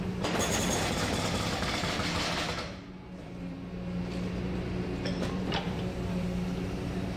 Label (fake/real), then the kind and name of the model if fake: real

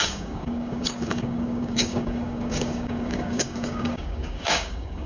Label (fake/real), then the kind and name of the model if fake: fake, codec, DAC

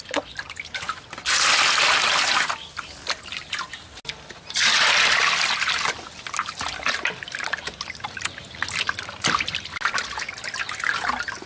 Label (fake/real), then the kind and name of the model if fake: real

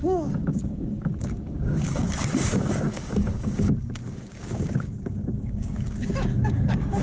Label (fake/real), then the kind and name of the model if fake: fake, codec, DAC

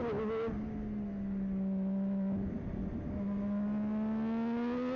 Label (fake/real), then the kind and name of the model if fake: real